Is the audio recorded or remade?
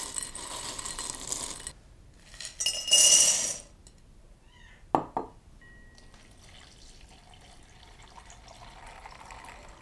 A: recorded